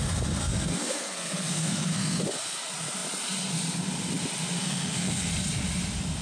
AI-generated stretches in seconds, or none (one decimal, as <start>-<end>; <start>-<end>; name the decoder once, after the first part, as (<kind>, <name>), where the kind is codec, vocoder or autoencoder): 0.4-2.2 (codec, SNAC); 4.6-5.3